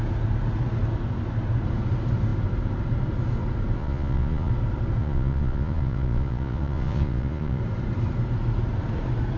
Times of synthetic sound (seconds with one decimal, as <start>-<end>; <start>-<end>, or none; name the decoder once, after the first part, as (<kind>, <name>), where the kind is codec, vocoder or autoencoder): 3.8-4.5 (vocoder, Vocos); 5.0-7.6